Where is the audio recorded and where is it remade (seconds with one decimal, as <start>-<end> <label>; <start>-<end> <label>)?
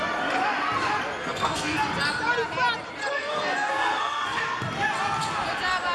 0.0-1.2 recorded; 1.2-1.8 remade; 1.8-3.0 recorded; 3.0-4.4 remade; 4.4-5.9 recorded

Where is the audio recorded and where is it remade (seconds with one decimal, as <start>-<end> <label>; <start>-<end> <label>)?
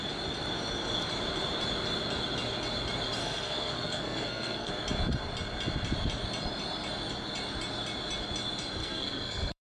0.0-3.2 recorded; 3.2-4.7 remade; 4.7-8.8 recorded; 8.8-9.6 remade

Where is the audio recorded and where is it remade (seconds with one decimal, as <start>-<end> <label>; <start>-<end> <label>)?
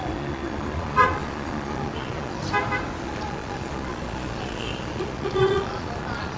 0.0-2.4 remade; 2.4-3.0 recorded; 3.0-6.4 remade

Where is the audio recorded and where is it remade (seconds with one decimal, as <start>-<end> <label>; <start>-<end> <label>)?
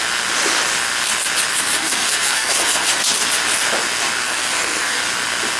0.0-1.5 recorded; 1.5-3.1 remade; 3.1-4.2 recorded; 4.2-5.0 remade; 5.0-5.6 recorded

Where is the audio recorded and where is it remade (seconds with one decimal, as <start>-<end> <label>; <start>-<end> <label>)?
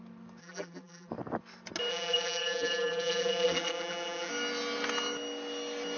0.0-0.4 recorded; 0.4-1.1 remade; 1.1-1.9 recorded; 1.9-4.3 remade; 4.3-6.0 recorded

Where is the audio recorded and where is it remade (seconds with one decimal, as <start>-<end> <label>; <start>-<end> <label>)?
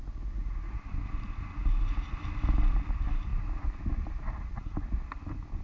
0.0-5.6 recorded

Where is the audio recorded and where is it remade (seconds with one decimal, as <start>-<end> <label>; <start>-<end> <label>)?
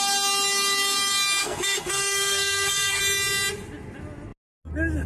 0.0-1.4 recorded; 1.4-3.0 remade; 3.0-5.1 recorded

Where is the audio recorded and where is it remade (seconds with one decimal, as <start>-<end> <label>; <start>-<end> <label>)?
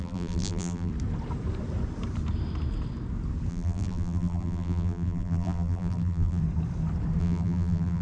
0.0-0.9 remade; 0.9-3.5 recorded; 3.5-6.4 remade; 6.4-7.2 recorded; 7.2-8.0 remade